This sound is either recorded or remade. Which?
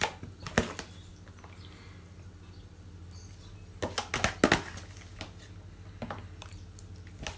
recorded